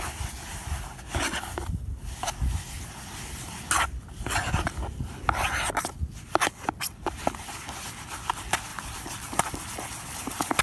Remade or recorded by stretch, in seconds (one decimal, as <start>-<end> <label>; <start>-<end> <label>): 0.0-8.7 recorded; 8.7-9.4 remade; 9.4-10.6 recorded